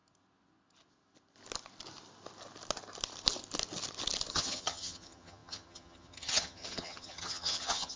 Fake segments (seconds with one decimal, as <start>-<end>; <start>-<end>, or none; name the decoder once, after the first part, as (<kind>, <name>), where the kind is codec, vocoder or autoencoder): 4.3-8.0 (vocoder, HiFi-GAN)